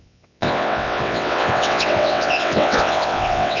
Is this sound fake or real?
fake